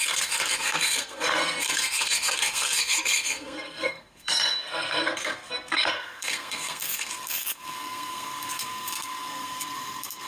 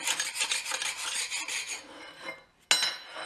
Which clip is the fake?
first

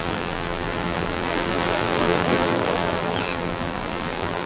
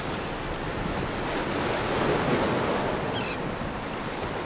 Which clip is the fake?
first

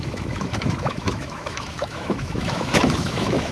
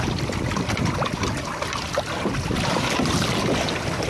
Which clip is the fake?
first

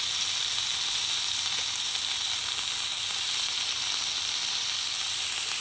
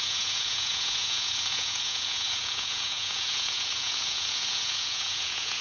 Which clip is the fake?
second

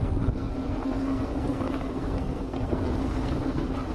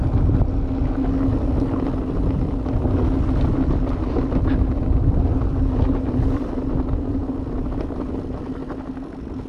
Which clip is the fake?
first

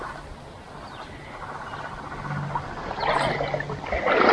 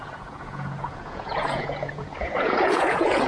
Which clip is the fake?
second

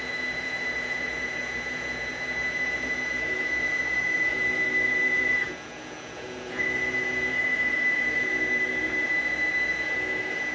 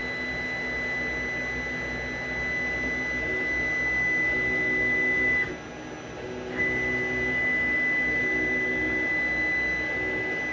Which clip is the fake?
first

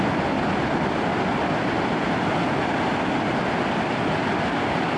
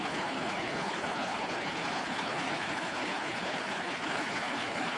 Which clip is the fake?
second